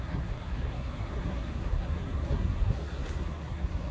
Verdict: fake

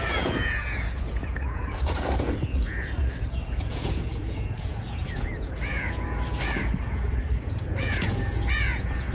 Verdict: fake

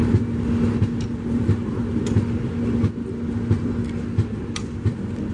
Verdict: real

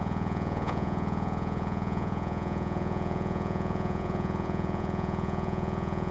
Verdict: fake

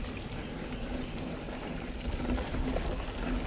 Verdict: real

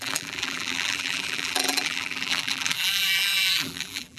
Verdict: fake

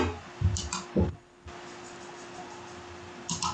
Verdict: fake